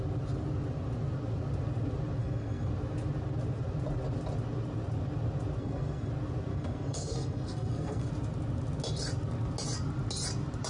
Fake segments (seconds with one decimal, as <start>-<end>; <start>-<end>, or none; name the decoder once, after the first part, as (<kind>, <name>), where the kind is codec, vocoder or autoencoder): 2.2-2.7 (codec, SNAC); 5.6-6.1; 6.5-8.1